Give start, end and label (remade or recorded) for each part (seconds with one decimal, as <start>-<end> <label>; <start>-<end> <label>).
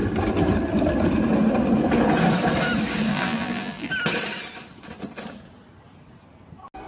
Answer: 0.0-3.1 recorded; 3.1-3.9 remade; 3.9-6.9 recorded